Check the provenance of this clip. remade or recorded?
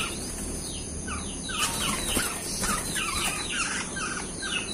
recorded